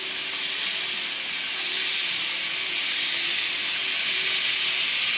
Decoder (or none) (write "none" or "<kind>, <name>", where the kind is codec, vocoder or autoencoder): none